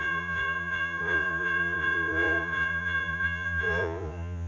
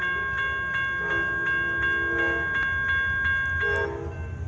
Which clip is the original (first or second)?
second